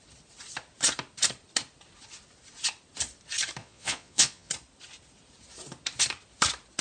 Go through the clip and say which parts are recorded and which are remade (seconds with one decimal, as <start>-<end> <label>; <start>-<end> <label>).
0.0-3.6 recorded; 3.6-4.5 remade; 4.5-6.8 recorded